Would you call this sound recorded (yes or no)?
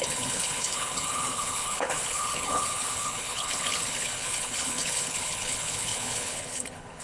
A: no